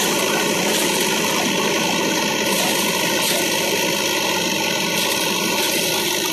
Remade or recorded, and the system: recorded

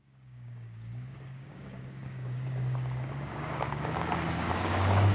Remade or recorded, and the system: remade, codec, DAC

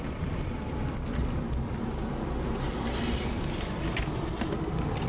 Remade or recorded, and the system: remade, vocoder, BigVGAN v2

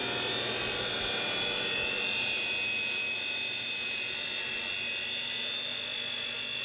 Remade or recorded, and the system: recorded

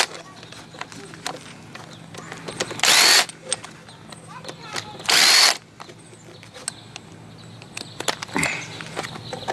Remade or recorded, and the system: recorded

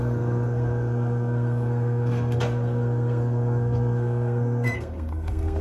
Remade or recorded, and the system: remade, codec, SNAC